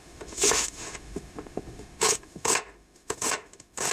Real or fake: fake